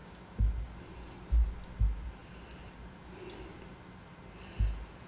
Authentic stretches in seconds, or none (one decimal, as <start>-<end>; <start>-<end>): 0.5-5.1